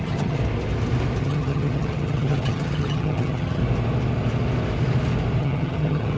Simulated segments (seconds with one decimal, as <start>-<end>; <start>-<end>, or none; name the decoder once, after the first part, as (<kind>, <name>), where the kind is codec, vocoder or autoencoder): 0.0-0.4 (vocoder, HiFi-GAN); 1.2-3.6; 5.4-6.2